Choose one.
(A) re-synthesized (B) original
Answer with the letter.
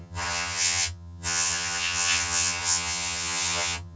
A